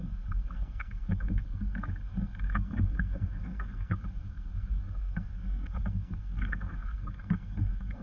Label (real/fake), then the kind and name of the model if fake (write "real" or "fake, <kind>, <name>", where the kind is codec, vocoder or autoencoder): fake, codec, SNAC